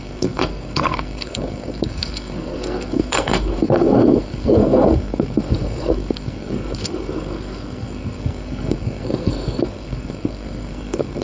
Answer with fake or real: fake